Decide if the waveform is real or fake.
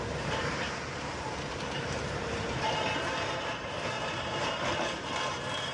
fake